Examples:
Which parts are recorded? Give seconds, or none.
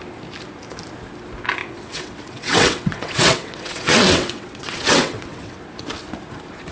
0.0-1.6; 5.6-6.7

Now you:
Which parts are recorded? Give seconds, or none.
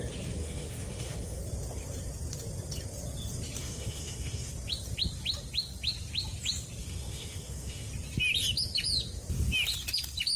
0.0-0.4; 1.4-3.6; 4.5-6.8; 7.9-10.4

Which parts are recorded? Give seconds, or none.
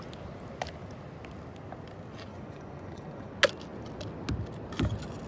0.0-2.3; 3.3-5.3